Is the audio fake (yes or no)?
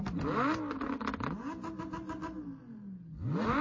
no